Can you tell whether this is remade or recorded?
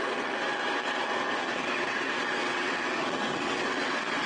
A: remade